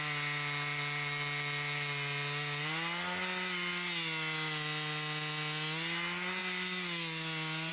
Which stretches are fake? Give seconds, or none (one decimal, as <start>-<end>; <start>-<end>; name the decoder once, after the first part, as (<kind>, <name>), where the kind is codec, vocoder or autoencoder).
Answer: none